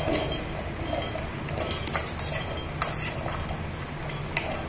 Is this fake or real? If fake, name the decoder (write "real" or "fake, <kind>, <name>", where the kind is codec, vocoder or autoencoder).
real